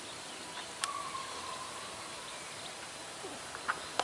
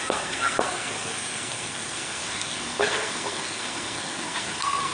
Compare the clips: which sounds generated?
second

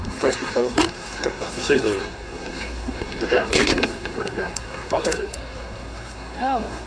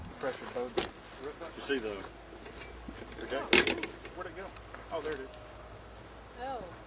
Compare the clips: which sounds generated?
first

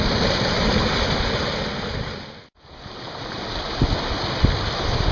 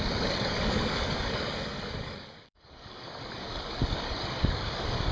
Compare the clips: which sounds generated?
second